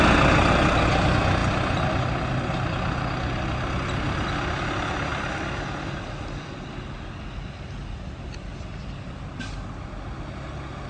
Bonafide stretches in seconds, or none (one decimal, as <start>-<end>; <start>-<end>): 0.0-10.9